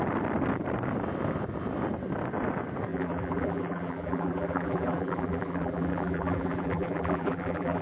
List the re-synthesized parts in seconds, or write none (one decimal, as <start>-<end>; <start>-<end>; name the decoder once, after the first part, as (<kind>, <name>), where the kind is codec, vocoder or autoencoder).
2.9-7.8 (vocoder, BigVGAN v2)